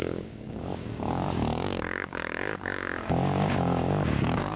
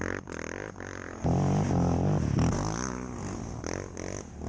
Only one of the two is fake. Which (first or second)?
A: first